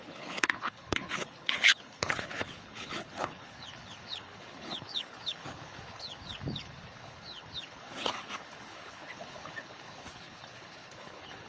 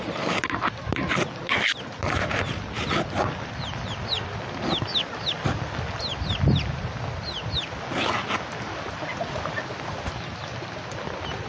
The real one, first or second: second